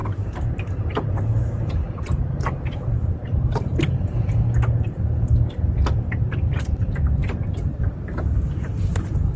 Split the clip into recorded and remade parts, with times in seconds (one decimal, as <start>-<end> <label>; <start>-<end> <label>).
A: 0.0-4.4 remade; 4.4-9.4 recorded